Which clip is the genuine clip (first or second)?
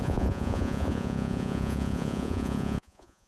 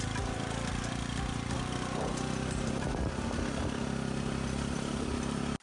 second